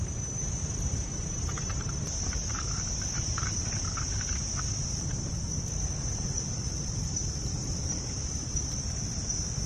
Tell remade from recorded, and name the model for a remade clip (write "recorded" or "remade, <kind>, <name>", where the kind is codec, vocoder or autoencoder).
remade, vocoder, BigVGAN v2